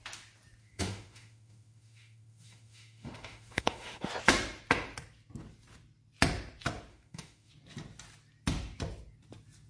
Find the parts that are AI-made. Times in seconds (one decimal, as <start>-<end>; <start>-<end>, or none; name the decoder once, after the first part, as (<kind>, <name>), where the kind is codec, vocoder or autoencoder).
0.6-4.1 (autoencoder, DAC-VAE); 6.9-7.5